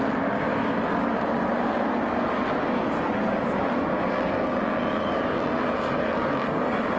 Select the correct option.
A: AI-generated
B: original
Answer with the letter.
B